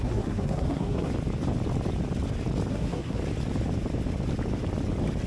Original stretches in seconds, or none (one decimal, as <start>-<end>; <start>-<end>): 1.1-2.7; 3.2-5.3